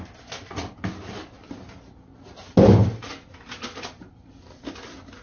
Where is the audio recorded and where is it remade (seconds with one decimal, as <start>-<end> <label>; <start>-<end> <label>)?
0.0-5.2 recorded